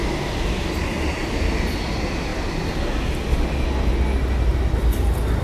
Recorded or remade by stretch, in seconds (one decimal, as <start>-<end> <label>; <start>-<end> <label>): 0.0-5.4 recorded